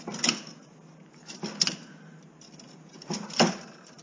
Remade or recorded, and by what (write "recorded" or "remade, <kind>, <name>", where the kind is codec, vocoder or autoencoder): recorded